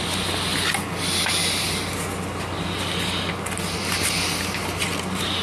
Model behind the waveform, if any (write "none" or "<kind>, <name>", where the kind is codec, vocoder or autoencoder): none